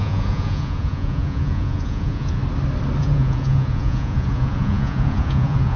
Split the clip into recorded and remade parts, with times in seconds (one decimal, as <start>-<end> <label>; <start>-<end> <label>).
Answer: 0.0-2.4 remade; 2.4-3.0 recorded; 3.0-5.8 remade